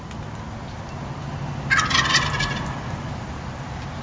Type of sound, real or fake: real